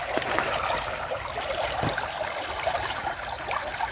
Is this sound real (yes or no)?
yes